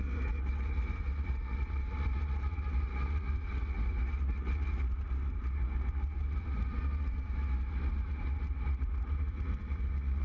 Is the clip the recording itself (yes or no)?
no